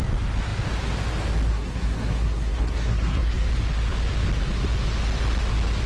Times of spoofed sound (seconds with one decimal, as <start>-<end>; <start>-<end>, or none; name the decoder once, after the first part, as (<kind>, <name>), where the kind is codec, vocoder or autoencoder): 1.5-3.5 (codec, SNAC)